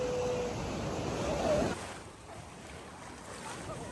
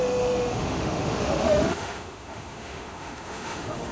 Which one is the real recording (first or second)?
first